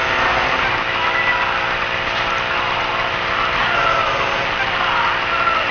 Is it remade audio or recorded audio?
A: recorded